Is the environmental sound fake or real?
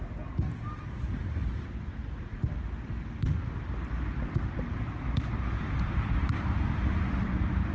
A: real